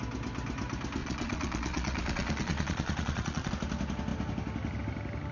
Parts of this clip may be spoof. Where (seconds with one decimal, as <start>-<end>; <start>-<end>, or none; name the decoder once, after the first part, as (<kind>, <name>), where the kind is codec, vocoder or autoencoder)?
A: 1.0-3.5 (vocoder, Vocos)